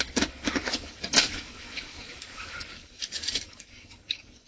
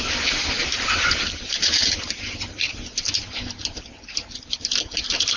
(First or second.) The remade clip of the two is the first